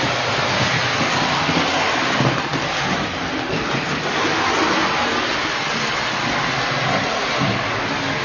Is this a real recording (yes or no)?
yes